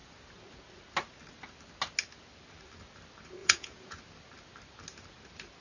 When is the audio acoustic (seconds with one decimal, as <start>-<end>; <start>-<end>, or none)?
0.0-3.4; 4.0-5.6